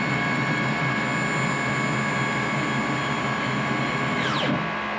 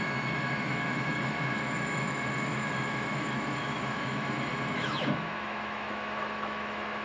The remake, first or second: second